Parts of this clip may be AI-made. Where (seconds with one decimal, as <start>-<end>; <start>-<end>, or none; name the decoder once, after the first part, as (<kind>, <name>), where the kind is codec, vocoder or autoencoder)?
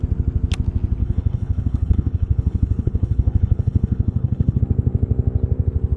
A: 1.0-4.6 (codec, HILCodec)